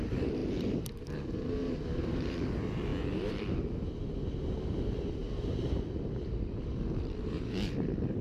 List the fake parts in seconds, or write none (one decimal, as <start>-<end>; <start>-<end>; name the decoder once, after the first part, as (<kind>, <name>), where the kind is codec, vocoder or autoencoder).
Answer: 0.0-8.2 (vocoder, BigVGAN v2)